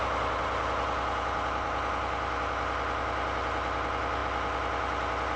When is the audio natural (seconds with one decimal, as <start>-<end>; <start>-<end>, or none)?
0.0-5.4